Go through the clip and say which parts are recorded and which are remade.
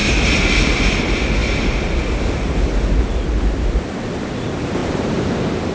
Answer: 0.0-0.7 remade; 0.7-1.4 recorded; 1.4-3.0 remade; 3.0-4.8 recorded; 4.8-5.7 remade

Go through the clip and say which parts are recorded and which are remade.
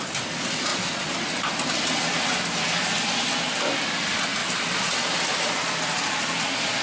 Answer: 0.0-4.4 recorded; 4.4-4.9 remade; 4.9-6.8 recorded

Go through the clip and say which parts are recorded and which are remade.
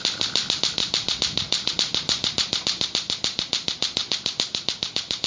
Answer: 0.0-5.3 recorded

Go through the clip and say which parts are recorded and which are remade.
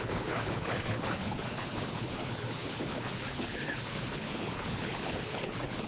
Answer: 0.0-5.9 remade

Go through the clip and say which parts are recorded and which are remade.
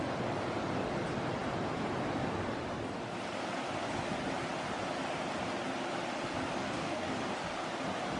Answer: 0.0-6.6 recorded; 6.6-7.1 remade; 7.1-8.2 recorded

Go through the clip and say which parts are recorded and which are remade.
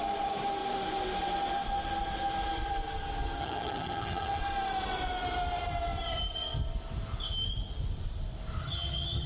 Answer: 0.0-3.4 recorded; 3.4-4.4 remade; 4.4-8.6 recorded; 8.6-9.3 remade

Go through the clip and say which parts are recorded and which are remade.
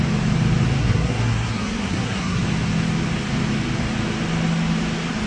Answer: 0.0-0.8 recorded; 0.8-2.4 remade; 2.4-5.3 recorded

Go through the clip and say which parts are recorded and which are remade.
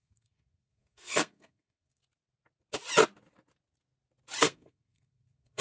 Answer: 0.0-2.0 remade; 2.0-4.4 recorded; 4.4-5.6 remade